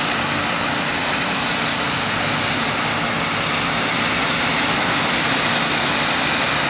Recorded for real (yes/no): yes